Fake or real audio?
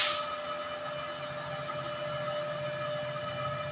real